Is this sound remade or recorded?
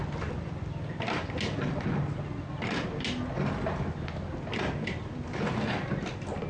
recorded